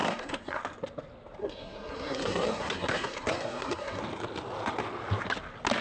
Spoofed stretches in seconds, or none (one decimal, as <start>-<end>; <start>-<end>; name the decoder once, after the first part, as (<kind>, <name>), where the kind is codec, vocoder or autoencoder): 0.0-0.6 (codec, SNAC); 1.4-4.0